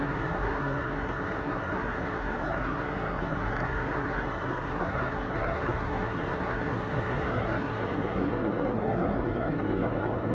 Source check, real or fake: fake